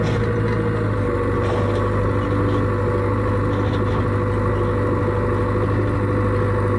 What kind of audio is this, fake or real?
real